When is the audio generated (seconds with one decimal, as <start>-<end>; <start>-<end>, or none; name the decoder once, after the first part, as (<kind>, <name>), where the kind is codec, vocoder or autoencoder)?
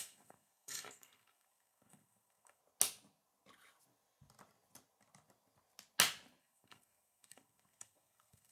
0.0-2.6 (codec, SNAC); 6.4-8.5